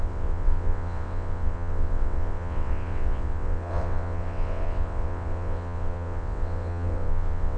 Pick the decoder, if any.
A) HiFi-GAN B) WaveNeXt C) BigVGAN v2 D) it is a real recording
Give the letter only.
B